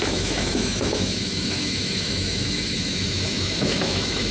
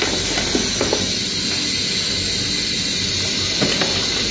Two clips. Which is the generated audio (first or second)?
first